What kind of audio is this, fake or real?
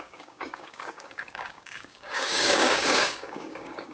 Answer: fake